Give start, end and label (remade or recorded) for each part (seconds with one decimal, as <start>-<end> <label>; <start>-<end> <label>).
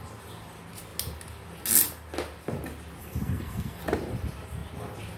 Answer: 0.0-3.0 recorded; 3.0-3.8 remade; 3.8-5.2 recorded